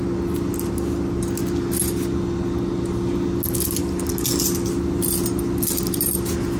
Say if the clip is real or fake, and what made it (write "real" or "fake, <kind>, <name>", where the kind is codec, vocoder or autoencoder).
real